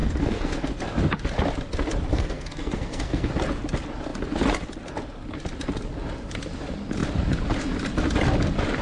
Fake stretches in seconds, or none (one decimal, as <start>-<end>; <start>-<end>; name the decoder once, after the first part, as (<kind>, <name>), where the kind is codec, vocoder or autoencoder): 0.0-0.7 (codec, SNAC); 2.1-3.3

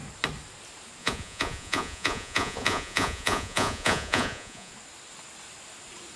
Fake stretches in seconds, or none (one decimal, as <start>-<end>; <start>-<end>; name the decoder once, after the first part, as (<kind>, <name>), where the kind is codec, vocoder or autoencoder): 1.0-4.7 (vocoder, Vocos)

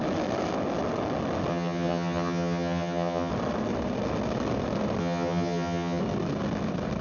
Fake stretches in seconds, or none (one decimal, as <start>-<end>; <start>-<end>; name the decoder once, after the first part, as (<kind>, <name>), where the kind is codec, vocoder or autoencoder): 1.5-3.3 (vocoder, HiFi-GAN); 5.0-6.0